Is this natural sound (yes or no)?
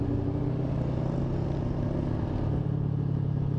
yes